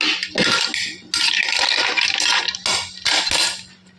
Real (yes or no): yes